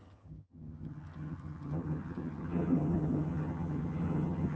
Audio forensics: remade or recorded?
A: remade